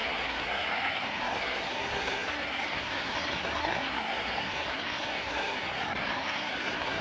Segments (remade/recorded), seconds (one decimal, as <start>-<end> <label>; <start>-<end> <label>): 0.0-7.0 remade